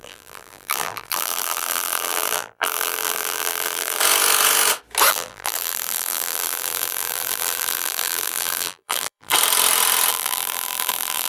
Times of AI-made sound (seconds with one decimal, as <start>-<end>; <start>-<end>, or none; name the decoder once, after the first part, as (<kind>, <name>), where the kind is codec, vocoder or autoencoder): 0.0-4.0 (vocoder, BigVGAN v2); 5.1-9.3; 10.1-11.3